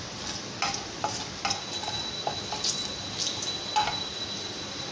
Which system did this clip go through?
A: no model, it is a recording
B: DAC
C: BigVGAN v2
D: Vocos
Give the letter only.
A